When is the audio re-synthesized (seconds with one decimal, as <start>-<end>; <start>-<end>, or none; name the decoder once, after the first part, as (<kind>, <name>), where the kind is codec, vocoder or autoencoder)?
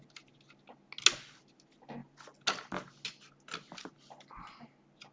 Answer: none